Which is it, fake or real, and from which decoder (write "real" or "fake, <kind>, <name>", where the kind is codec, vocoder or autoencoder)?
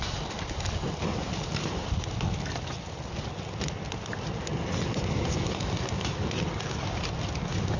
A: real